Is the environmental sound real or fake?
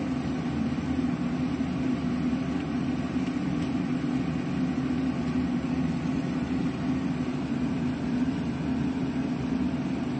real